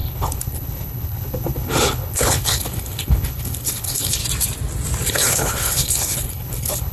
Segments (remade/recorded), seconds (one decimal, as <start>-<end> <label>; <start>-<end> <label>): 0.0-4.2 remade; 4.2-5.1 recorded; 5.1-6.9 remade